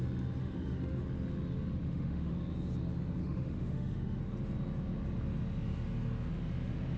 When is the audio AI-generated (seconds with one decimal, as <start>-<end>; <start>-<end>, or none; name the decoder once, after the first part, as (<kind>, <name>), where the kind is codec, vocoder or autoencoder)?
0.4-1.0 (autoencoder, DAC-VAE); 1.8-2.3; 3.2-4.2